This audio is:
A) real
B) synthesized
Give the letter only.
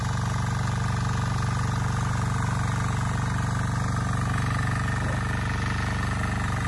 A